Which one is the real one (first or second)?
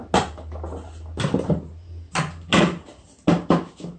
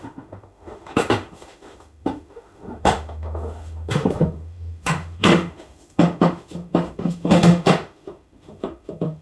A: first